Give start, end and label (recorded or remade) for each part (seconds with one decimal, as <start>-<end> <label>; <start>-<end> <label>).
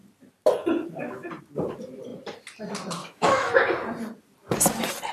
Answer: 0.0-3.0 recorded; 3.0-3.5 remade; 3.5-5.1 recorded